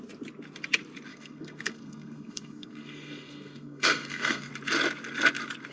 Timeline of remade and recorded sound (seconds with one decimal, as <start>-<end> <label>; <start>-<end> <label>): 0.0-1.1 recorded; 1.1-4.5 remade; 4.5-5.7 recorded